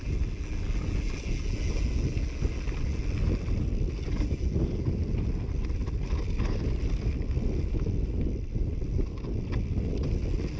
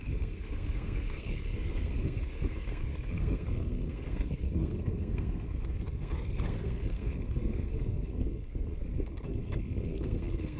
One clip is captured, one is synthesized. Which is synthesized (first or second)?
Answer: second